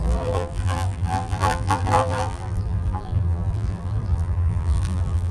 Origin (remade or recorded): remade